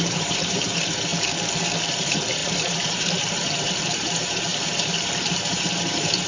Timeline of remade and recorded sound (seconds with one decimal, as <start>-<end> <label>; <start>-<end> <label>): 0.0-1.1 remade; 1.1-1.9 recorded; 1.9-6.3 remade